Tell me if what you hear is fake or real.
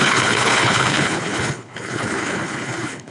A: fake